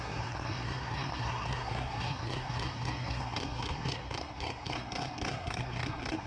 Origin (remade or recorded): remade